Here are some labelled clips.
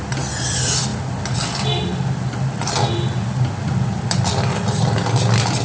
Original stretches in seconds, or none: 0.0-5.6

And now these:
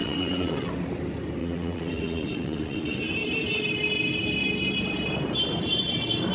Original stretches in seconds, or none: 0.7-1.4; 3.0-6.3

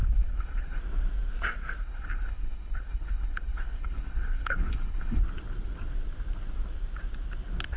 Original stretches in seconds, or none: 0.8-1.8; 5.2-7.8

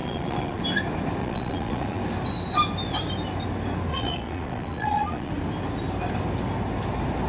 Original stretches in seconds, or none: 0.6-1.2; 2.0-3.9; 5.3-7.3

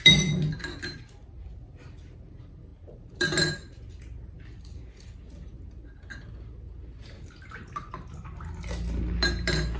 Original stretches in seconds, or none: 0.0-9.8

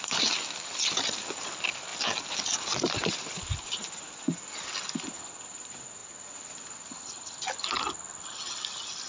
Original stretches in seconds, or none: 0.0-9.1

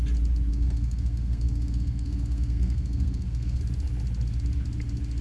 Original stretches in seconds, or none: 0.0-0.5; 3.6-5.2

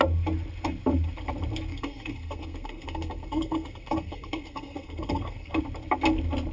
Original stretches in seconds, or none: 0.0-1.7; 5.6-6.5